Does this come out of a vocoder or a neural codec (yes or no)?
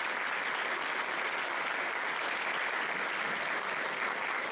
no